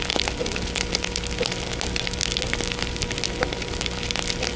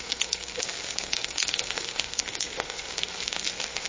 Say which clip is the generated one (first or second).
second